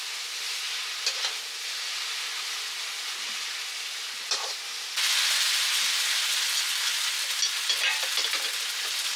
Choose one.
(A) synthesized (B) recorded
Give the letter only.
B